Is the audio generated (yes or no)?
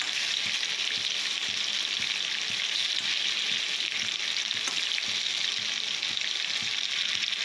no